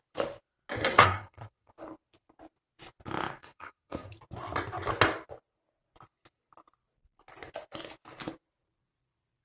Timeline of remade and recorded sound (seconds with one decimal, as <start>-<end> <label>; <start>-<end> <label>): 0.0-0.8 recorded; 0.8-1.7 remade; 1.7-3.4 recorded; 3.4-4.1 remade; 4.1-9.4 recorded